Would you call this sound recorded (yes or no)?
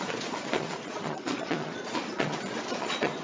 no